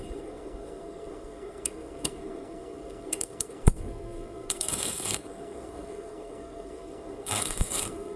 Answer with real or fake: fake